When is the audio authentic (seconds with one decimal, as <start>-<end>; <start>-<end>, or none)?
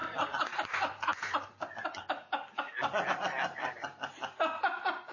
0.0-5.1